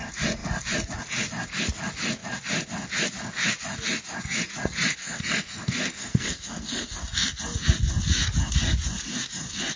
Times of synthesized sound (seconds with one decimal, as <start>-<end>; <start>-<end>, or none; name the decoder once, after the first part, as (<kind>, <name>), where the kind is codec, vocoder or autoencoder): 5.0-7.4 (codec, SNAC)